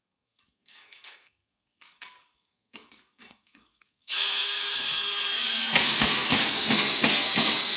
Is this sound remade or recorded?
remade